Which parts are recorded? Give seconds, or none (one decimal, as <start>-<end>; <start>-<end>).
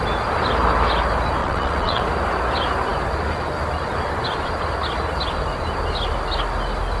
0.0-1.4; 2.0-7.0